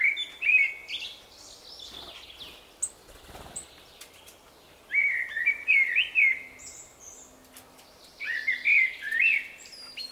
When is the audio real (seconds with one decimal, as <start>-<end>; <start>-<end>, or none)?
0.0-10.1